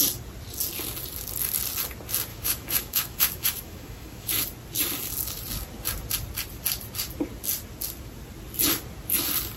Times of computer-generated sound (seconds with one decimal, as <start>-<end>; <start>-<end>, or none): 2.3-4.4